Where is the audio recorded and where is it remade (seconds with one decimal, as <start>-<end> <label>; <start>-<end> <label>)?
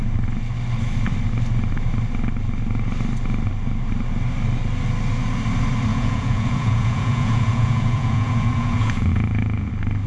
0.0-5.9 recorded; 5.9-9.7 remade; 9.7-10.1 recorded